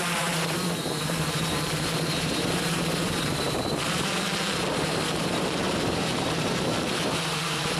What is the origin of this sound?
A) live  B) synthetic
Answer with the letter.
B